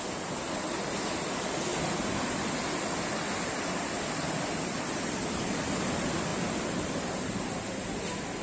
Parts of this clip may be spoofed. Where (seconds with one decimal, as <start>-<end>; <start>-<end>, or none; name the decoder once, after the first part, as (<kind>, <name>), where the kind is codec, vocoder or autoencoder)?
none